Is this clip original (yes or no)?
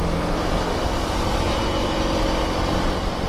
yes